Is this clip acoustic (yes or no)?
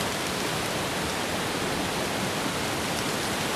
yes